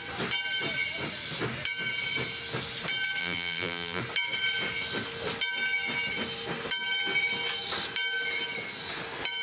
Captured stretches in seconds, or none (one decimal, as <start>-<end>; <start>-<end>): 0.0-3.2; 4.0-9.4

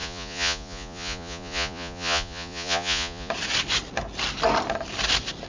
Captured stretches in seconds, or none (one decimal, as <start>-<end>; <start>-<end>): 3.3-5.5